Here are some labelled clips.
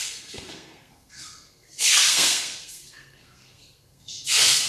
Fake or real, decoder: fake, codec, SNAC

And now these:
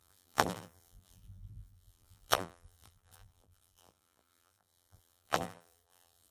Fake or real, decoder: fake, vocoder, BigVGAN v2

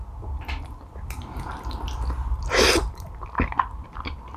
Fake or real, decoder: real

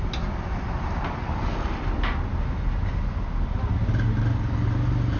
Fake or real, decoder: real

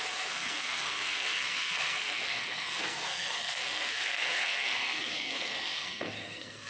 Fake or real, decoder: fake, codec, SNAC